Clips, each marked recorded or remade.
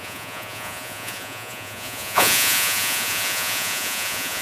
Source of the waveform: remade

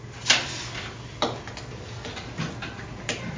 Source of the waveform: recorded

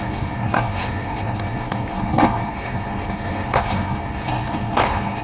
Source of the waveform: remade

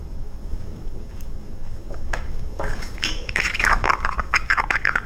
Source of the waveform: remade